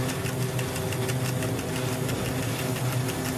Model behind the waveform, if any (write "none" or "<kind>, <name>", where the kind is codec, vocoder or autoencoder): none